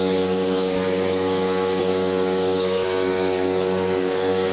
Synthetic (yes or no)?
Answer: yes